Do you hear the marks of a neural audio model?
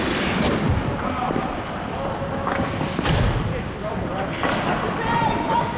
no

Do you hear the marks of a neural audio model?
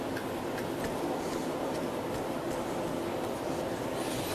no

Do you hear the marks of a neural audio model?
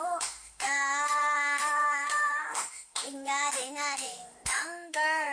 yes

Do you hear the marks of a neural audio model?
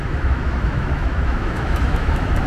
yes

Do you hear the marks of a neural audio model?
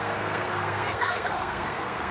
yes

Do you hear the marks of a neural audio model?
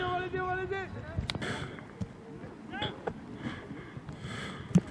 no